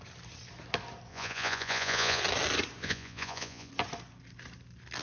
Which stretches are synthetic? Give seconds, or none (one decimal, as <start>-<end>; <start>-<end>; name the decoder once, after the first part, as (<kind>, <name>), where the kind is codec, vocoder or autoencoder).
1.1-2.2 (vocoder, Vocos); 2.8-3.7